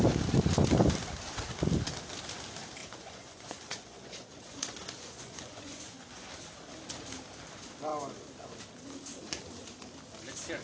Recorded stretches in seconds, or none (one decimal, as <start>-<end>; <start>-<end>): 0.0-2.8; 6.3-10.6